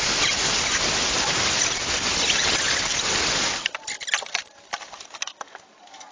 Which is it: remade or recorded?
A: recorded